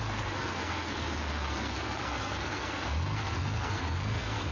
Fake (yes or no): yes